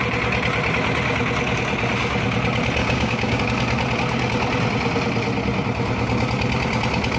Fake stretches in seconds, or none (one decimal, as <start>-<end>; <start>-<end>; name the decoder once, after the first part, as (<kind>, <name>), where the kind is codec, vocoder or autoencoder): 2.8-3.4 (codec, DAC)